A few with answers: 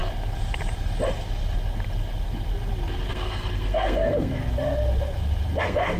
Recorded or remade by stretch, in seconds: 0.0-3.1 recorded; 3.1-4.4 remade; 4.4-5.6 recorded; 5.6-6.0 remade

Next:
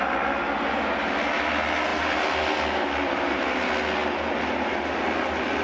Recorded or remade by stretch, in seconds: 0.0-5.6 recorded